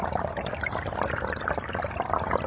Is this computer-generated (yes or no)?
no